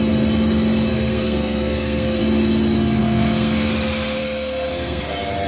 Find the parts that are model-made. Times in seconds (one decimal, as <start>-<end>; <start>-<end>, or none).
0.9-2.2; 3.0-3.7; 4.2-5.0